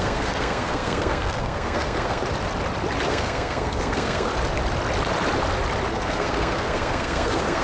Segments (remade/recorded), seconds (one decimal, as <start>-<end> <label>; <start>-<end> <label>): 0.0-2.2 remade; 2.2-3.1 recorded; 3.1-4.3 remade; 4.3-5.9 recorded; 5.9-7.6 remade